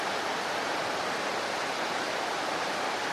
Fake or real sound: fake